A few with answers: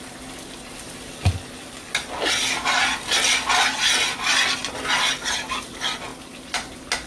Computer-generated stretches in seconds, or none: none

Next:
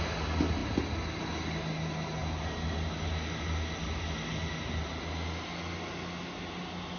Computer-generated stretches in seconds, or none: none

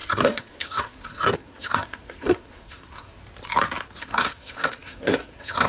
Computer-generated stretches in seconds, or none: 0.0-3.2 (codec, SNAC); 4.0-5.7

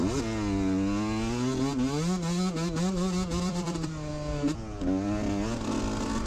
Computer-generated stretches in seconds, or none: 3.5-4.1 (vocoder, BigVGAN v2)